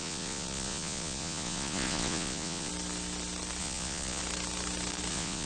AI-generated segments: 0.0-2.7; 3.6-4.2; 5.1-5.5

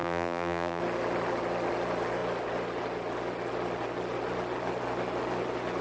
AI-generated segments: 0.0-0.8

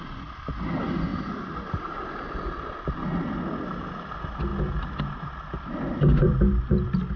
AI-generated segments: none

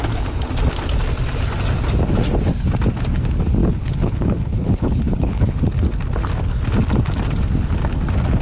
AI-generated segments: 3.6-5.6

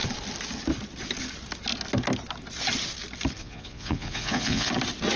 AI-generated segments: 3.4-4.7

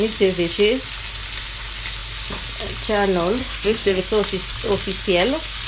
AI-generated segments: 3.4-4.0